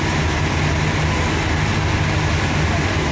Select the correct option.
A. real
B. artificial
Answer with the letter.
A